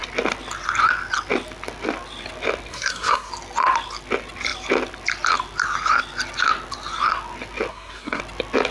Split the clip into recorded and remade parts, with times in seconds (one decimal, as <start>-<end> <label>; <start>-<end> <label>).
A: 0.0-2.7 recorded; 2.7-3.3 remade; 3.3-7.7 recorded; 7.7-8.2 remade; 8.2-8.7 recorded